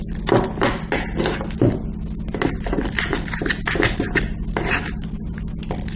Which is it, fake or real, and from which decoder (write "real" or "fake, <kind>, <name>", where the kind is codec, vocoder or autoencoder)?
real